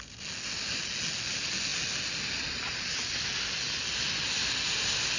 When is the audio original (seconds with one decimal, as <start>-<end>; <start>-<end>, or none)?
0.0-5.2